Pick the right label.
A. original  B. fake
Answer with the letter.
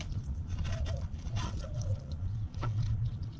B